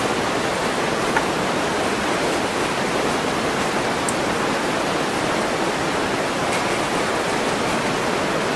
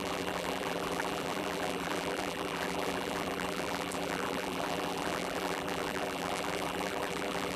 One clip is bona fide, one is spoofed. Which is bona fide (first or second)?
first